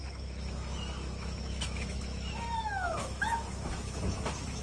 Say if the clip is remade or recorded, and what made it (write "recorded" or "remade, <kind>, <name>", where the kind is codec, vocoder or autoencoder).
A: remade, autoencoder, DAC-VAE